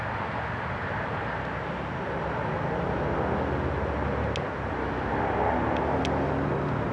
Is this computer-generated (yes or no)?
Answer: no